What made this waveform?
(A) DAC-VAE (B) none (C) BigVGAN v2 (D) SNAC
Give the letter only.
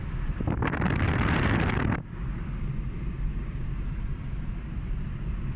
B